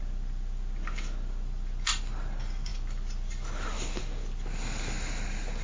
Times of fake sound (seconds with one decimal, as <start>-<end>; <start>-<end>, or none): none